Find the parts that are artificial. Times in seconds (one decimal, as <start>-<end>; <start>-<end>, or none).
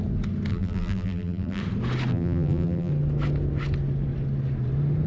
0.5-1.6; 2.1-2.9